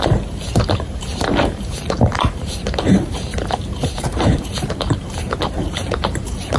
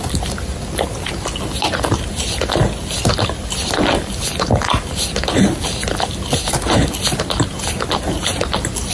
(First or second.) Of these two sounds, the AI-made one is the first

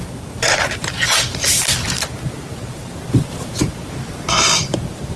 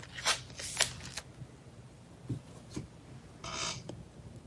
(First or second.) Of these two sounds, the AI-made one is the first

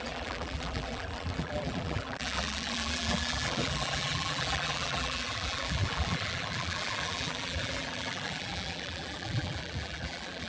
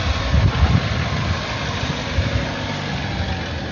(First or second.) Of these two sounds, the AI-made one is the first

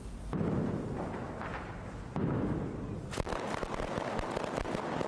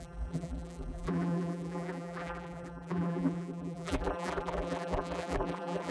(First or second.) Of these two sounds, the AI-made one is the second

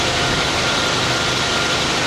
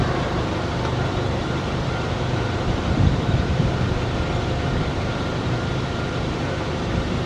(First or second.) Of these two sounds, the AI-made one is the second